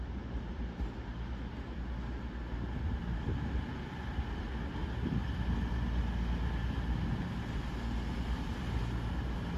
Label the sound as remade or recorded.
recorded